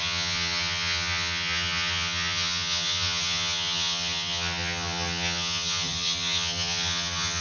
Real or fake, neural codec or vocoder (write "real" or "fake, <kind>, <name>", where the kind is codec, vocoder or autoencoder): fake, vocoder, HiFi-GAN